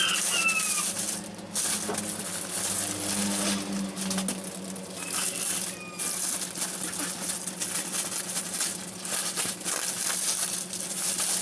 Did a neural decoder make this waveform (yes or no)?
no